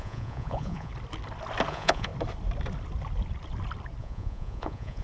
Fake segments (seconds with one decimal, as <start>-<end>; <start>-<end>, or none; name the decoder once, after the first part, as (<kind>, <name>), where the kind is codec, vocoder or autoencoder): 0.0-0.9 (vocoder, Vocos); 1.7-2.1; 4.0-5.0